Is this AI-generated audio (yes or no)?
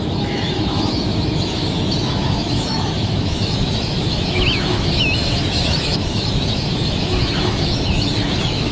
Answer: yes